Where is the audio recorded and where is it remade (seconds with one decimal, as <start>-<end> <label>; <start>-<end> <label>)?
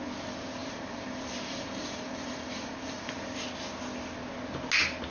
0.0-0.6 recorded; 0.6-3.1 remade; 3.1-5.1 recorded